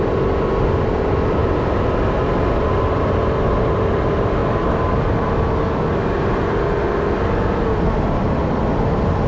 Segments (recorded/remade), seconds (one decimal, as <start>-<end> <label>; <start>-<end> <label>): 0.0-1.4 recorded; 1.4-2.1 remade; 2.1-4.4 recorded; 4.4-5.6 remade; 5.6-9.3 recorded